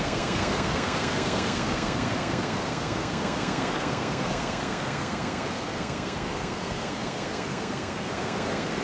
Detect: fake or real fake